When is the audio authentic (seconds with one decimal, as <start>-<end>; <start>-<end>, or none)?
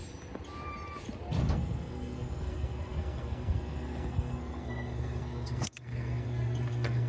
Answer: 0.0-1.4